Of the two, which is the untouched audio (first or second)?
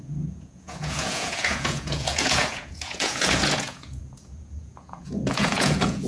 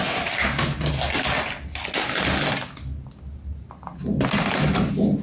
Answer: second